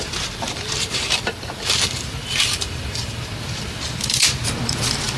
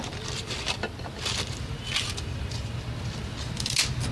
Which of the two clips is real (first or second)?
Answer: second